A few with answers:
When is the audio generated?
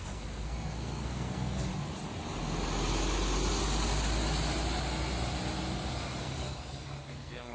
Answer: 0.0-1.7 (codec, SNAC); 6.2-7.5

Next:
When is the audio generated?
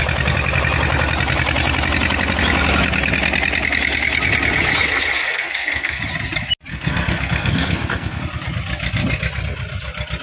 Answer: 5.2-6.0 (codec, SNAC); 6.7-8.2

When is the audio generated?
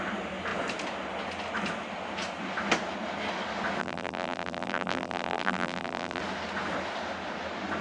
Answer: 3.8-6.2 (vocoder, BigVGAN v2)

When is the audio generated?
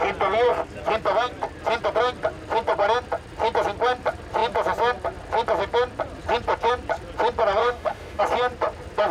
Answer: 7.6-8.2 (autoencoder, DAC-VAE)